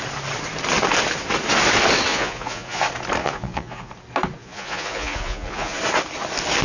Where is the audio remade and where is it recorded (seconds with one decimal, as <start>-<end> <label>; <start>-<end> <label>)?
0.0-2.1 recorded; 2.1-2.8 remade; 2.8-3.2 recorded; 3.2-3.9 remade; 3.9-4.4 recorded; 4.4-5.8 remade; 5.8-6.6 recorded